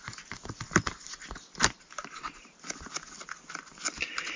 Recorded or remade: recorded